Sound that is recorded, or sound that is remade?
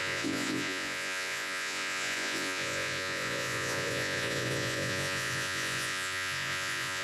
remade